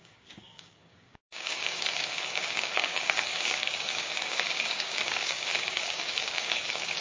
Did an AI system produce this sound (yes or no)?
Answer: yes